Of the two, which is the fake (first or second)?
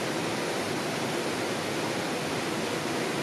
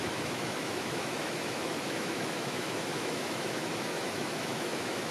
second